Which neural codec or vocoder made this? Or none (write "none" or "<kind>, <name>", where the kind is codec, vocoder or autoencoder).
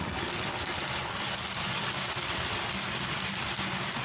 none